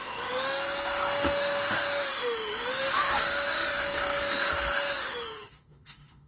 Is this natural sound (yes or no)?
no